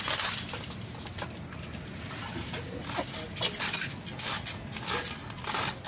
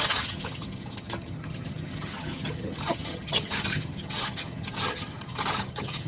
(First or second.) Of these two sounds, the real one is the first